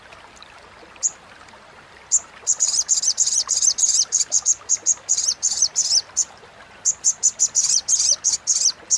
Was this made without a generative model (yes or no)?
yes